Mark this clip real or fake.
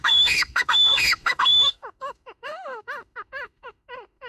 fake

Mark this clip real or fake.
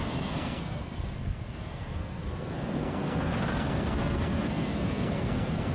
fake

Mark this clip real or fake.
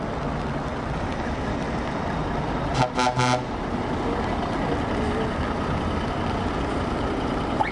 real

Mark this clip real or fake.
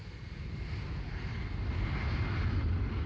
real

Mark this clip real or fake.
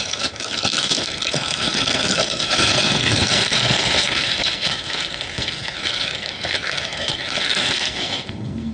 fake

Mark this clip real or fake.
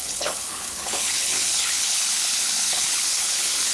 fake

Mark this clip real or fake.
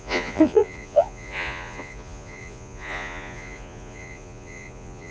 fake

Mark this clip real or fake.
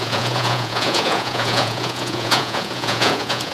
fake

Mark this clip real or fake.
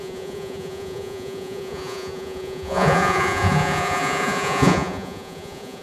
fake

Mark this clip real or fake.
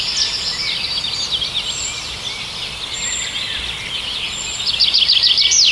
real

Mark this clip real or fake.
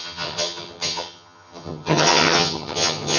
fake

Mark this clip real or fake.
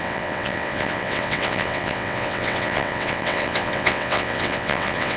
fake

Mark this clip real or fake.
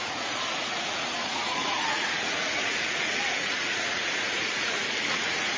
fake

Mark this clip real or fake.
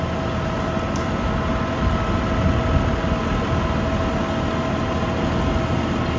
real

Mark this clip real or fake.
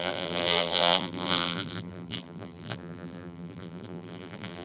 fake